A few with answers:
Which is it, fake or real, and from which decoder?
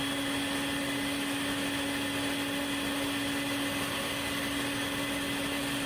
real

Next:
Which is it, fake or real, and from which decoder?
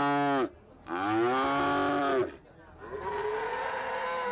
real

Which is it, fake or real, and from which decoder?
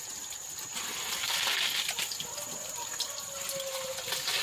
real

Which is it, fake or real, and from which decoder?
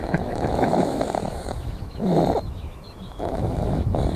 fake, autoencoder, DAC-VAE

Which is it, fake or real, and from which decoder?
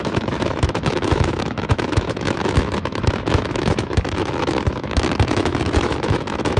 fake, autoencoder, DAC-VAE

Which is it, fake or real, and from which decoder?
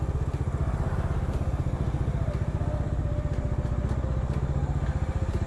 real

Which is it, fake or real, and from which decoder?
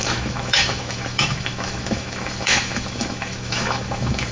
fake, autoencoder, DAC-VAE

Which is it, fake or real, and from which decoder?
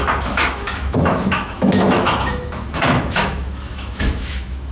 fake, autoencoder, DAC-VAE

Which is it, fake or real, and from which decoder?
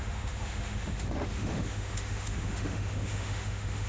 fake, autoencoder, DAC-VAE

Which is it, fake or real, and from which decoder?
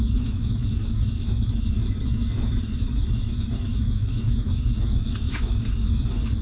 fake, autoencoder, DAC-VAE